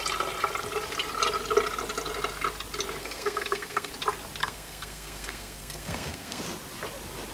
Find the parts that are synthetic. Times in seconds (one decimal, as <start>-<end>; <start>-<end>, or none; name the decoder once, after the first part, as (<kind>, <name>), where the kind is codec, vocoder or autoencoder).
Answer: 3.0-3.9 (codec, SNAC); 4.4-6.4